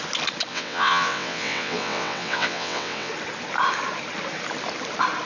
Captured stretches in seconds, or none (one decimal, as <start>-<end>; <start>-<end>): 0.0-0.5; 3.1-5.3

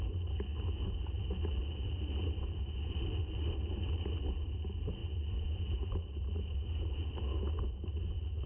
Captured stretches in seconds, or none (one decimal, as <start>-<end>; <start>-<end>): 0.0-8.5

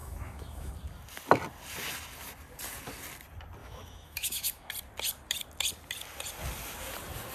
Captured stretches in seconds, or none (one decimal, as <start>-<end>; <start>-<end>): 0.7-3.6; 4.7-7.3

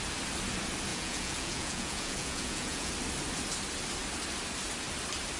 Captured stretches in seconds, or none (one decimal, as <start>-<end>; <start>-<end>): 0.0-0.9; 2.9-5.4

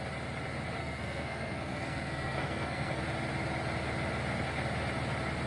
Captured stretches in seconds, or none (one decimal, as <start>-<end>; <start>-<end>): 0.0-0.8; 3.0-5.5

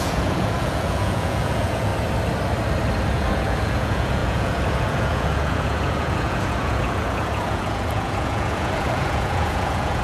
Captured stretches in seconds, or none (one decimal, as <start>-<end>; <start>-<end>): 1.9-3.1